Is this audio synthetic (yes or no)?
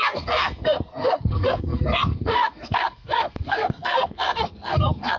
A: yes